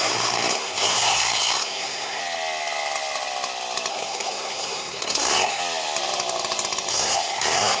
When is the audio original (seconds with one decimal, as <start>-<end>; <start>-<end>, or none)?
2.2-3.9; 5.6-6.9